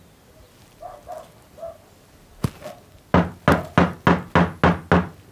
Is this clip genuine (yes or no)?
yes